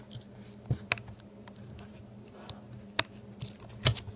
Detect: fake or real real